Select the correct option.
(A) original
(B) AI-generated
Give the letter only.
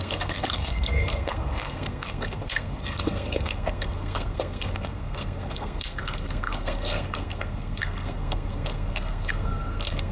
B